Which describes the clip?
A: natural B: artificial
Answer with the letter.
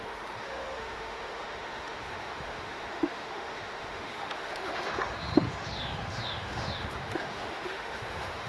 B